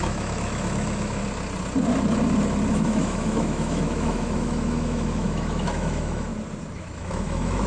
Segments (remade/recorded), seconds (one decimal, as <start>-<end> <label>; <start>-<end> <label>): 0.0-1.2 remade; 1.2-2.7 recorded; 2.7-6.3 remade; 6.3-6.8 recorded; 6.8-7.7 remade